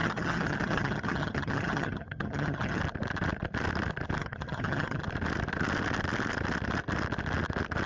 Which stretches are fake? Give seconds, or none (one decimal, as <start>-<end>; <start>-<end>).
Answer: 0.0-2.8; 4.2-5.0